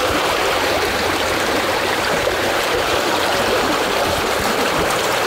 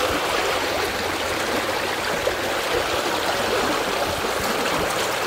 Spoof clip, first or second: first